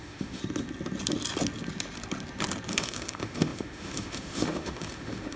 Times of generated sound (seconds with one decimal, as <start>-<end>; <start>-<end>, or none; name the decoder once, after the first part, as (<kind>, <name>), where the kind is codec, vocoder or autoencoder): 0.0-0.4 (autoencoder, DAC-VAE); 2.7-5.4